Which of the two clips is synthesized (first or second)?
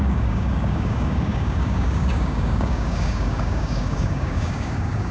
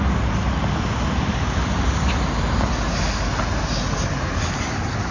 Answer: first